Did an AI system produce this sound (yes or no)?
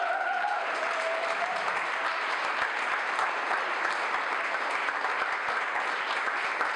yes